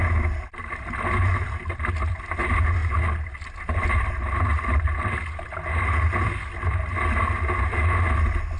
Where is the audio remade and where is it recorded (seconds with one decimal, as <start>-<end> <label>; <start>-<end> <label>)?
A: 0.0-8.6 recorded